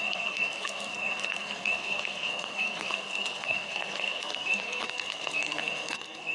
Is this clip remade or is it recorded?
remade